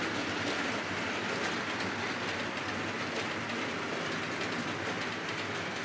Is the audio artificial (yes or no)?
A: no